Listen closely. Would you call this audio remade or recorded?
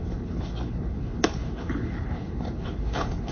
remade